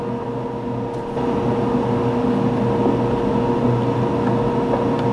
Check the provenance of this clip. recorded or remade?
recorded